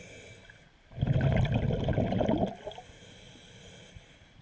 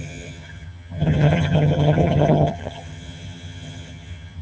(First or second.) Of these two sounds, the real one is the first